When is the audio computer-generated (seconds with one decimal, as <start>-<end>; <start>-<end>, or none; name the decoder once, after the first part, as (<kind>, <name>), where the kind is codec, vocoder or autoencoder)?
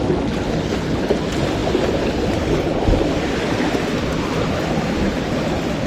none